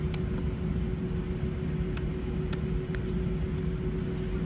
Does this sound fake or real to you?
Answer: real